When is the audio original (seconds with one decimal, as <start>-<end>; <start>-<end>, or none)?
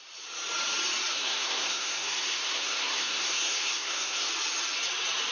0.0-1.1; 4.3-5.3